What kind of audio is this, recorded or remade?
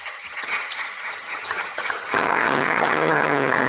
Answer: remade